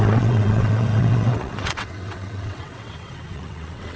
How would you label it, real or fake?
fake